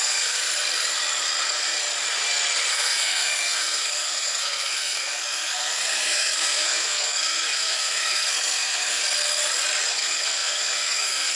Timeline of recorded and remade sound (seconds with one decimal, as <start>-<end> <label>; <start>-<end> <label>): 0.0-0.4 remade; 0.4-2.7 recorded; 2.7-9.0 remade; 9.0-9.9 recorded; 9.9-11.4 remade